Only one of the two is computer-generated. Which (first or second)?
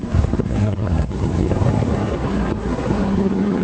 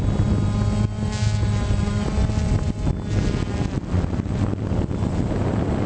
first